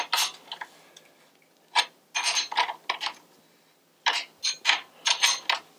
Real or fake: real